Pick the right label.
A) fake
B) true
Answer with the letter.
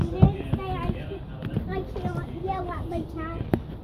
B